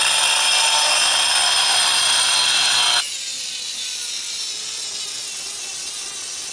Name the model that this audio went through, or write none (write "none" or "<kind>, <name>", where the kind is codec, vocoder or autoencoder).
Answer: none